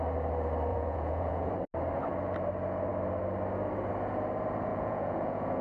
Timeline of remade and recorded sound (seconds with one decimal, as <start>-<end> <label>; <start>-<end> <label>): 0.0-0.7 recorded; 0.7-1.5 remade; 1.5-4.7 recorded; 4.7-5.6 remade